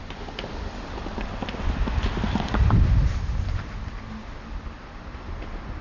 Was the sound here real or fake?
real